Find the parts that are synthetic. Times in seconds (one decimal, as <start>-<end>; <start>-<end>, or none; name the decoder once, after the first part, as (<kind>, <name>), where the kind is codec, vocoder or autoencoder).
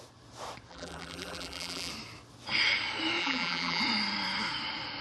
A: 0.7-1.9 (vocoder, BigVGAN v2); 3.2-3.8